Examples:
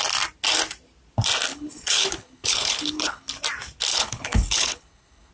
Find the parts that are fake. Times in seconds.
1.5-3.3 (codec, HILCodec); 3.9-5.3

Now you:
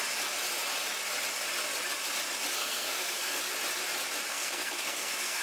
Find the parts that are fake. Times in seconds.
2.6-3.4 (codec, SNAC); 4.3-5.4

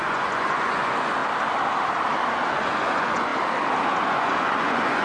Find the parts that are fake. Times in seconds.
0.0-1.2 (vocoder, Vocos); 2.3-3.3; 4.1-5.0

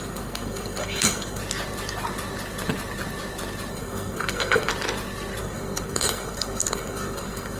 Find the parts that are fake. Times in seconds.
0.0-1.4 (codec, SNAC); 3.7-4.7; 5.4-7.6

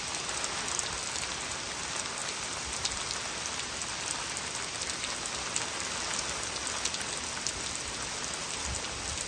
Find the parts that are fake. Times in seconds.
none

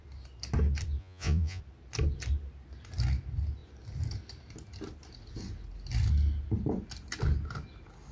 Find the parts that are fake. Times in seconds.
1.0-1.6 (vocoder, Vocos)